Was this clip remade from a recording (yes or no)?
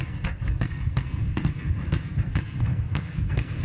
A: yes